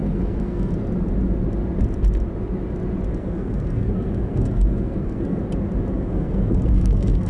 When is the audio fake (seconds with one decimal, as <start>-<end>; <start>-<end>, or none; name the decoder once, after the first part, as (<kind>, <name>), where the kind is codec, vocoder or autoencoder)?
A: 0.0-0.7 (codec, SNAC); 3.1-5.4; 5.9-7.3